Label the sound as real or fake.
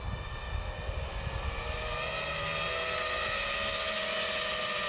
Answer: real